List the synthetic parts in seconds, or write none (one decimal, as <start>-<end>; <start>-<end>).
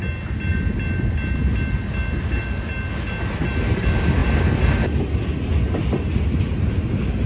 none